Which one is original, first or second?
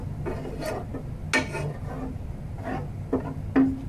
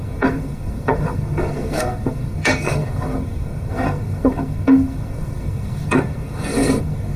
first